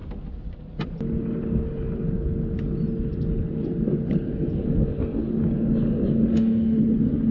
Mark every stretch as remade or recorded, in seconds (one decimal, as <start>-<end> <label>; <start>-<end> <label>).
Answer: 0.0-6.3 recorded; 6.3-6.8 remade; 6.8-7.3 recorded